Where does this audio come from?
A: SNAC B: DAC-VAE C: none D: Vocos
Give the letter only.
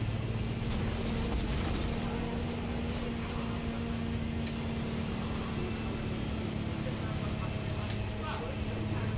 C